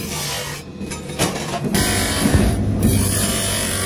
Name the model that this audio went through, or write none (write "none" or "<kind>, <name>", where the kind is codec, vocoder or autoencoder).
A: none